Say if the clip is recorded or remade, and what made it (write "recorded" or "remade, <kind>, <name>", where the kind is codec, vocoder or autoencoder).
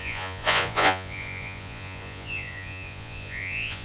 remade, vocoder, Vocos